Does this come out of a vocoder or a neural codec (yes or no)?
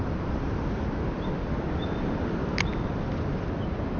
no